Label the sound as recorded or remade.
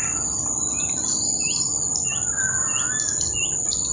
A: recorded